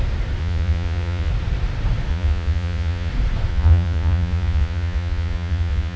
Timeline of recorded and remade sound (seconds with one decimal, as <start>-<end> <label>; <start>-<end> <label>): 0.0-0.4 recorded; 0.4-1.3 remade; 1.3-2.1 recorded; 2.1-3.1 remade; 3.1-3.5 recorded; 3.5-6.0 remade